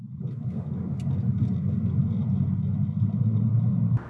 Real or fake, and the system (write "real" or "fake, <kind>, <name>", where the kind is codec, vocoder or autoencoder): real